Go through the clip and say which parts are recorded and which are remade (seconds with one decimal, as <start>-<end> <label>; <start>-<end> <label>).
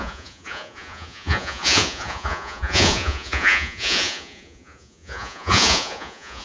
0.0-6.4 remade